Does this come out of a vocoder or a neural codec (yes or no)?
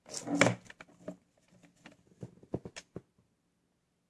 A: no